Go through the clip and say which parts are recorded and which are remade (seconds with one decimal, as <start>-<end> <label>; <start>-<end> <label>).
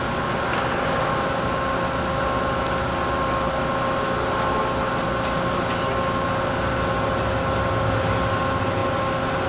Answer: 0.0-9.5 recorded